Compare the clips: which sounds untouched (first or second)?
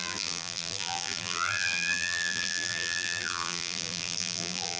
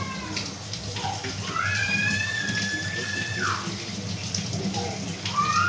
second